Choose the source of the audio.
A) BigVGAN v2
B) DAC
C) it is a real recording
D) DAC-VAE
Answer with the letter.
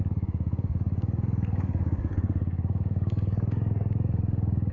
B